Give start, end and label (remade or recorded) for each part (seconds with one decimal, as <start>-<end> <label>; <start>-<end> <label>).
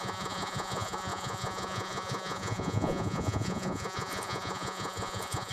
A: 0.0-5.5 remade